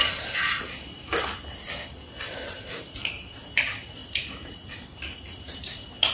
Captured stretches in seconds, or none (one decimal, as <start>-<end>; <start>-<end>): 0.0-6.1